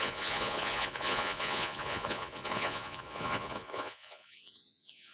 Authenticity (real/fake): fake